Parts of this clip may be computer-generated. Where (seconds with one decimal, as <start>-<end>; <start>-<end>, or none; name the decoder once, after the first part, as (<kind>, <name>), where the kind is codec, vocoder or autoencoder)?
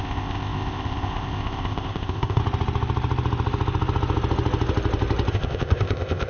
0.0-2.4 (codec, ZipCodec); 5.3-6.3